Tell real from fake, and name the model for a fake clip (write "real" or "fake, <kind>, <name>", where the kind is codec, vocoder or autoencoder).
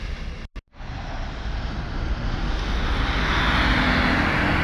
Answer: real